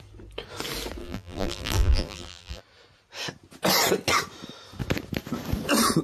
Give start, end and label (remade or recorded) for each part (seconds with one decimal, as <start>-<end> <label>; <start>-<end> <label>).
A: 0.0-1.0 recorded; 1.0-2.6 remade; 2.6-6.0 recorded